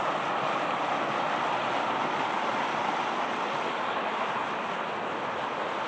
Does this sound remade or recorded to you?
recorded